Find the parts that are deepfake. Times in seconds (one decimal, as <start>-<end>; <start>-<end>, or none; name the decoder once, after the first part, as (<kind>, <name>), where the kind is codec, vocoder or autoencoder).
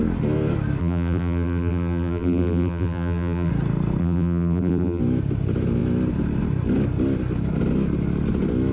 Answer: 0.8-3.5 (vocoder, BigVGAN v2); 4.0-5.0